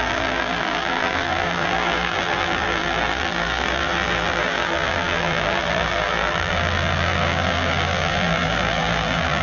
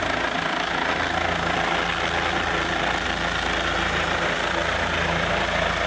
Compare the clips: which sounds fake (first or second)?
first